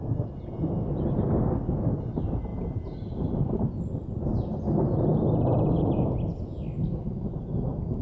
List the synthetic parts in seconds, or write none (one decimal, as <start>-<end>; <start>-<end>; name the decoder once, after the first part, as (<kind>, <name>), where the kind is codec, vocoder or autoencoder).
2.5-3.3 (vocoder, BigVGAN v2)

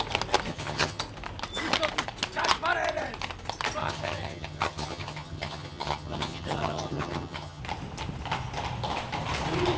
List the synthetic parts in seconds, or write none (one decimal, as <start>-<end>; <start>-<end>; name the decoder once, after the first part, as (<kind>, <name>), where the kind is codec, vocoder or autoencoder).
0.5-1.0 (vocoder, HiFi-GAN); 3.8-7.6

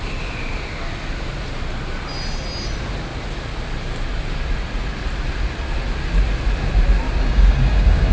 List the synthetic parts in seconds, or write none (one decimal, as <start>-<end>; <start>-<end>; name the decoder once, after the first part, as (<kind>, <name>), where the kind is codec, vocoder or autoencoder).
7.2-8.1 (codec, DAC)

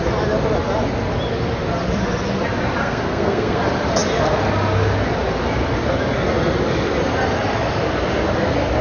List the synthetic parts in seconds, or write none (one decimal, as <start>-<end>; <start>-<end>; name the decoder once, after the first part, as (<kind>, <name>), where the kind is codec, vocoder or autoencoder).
2.8-3.6 (codec, SNAC)